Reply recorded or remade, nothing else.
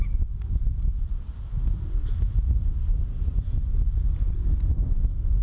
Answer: recorded